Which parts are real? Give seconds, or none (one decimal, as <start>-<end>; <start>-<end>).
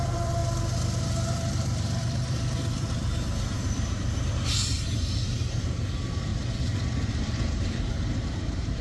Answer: 0.4-1.0; 6.3-7.0